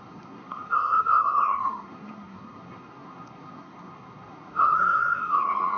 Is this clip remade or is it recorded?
remade